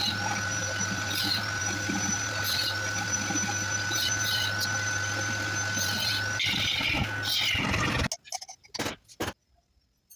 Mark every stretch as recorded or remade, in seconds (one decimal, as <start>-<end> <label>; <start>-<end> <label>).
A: 0.0-10.2 recorded